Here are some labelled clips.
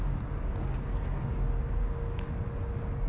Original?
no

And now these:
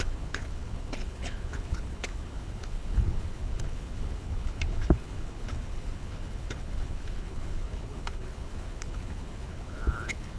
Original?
no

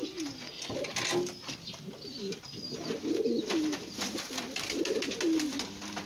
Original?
yes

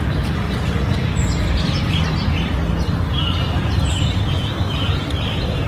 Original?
yes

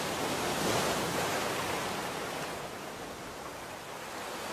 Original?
yes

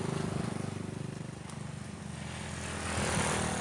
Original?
yes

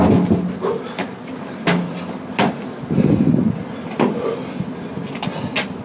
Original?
yes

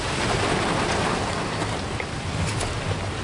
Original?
yes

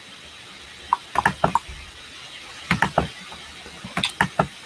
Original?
yes